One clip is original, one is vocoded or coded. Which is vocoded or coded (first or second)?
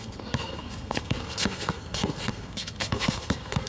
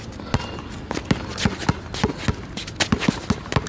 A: first